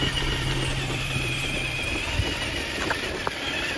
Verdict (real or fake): fake